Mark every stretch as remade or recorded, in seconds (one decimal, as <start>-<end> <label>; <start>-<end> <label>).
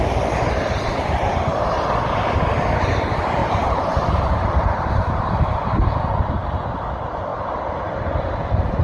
0.0-0.9 recorded; 0.9-1.5 remade; 1.5-3.4 recorded; 3.4-4.5 remade; 4.5-8.8 recorded